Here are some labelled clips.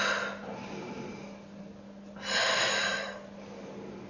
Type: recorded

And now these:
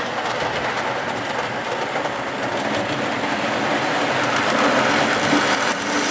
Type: recorded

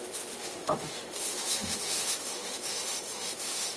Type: remade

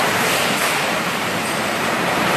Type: remade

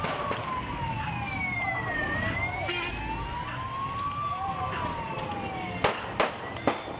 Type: recorded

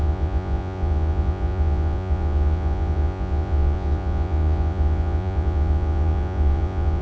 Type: remade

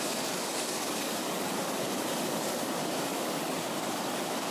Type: remade